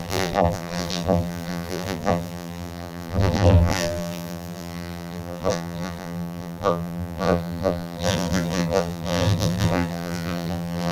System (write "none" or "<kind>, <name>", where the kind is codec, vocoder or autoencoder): vocoder, BigVGAN v2